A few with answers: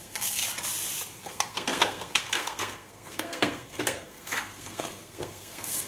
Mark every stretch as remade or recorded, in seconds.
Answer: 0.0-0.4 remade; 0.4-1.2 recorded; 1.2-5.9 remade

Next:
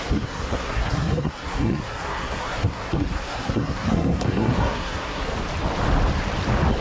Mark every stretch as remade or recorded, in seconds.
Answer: 0.0-5.3 remade; 5.3-6.8 recorded

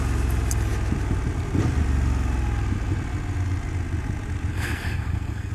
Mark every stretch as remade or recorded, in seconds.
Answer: 0.0-4.5 recorded; 4.5-5.5 remade

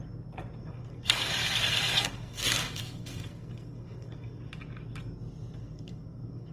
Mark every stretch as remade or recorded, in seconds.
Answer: 0.0-0.6 recorded; 0.6-4.5 remade; 4.5-5.6 recorded; 5.6-6.5 remade

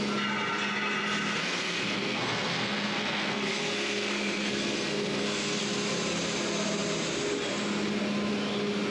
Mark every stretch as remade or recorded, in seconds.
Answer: 0.0-1.4 recorded; 1.4-5.6 remade; 5.6-8.9 recorded

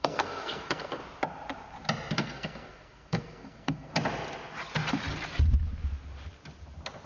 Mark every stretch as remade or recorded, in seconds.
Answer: 0.0-1.0 remade; 1.0-2.1 recorded; 2.1-3.9 remade; 3.9-7.1 recorded

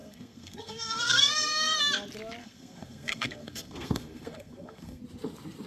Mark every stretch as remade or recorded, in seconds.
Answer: 0.0-1.8 remade; 1.8-2.4 recorded; 2.4-5.0 remade; 5.0-5.7 recorded

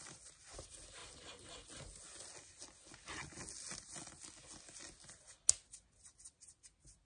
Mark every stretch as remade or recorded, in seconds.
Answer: 0.0-7.0 recorded